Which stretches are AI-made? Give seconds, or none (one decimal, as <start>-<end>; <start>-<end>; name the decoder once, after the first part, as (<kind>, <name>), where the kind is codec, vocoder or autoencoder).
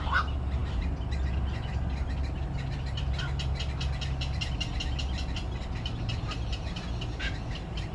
none